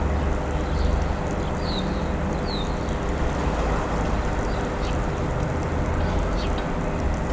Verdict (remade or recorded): recorded